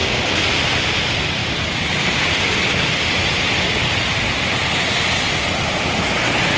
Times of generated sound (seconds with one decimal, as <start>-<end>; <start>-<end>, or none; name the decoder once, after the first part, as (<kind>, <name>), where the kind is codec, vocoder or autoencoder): none